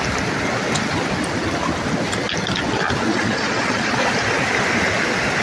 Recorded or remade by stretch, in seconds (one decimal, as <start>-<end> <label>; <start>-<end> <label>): 0.0-3.1 recorded; 3.1-3.9 remade; 3.9-5.4 recorded

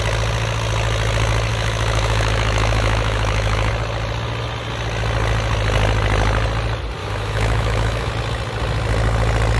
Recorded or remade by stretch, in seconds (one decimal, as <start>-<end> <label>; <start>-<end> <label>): 0.0-1.5 recorded; 1.5-3.7 remade; 3.7-7.0 recorded; 7.0-8.1 remade; 8.1-9.6 recorded